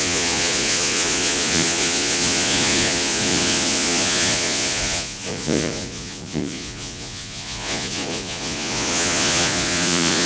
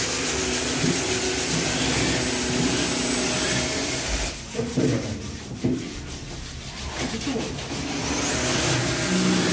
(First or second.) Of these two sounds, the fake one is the first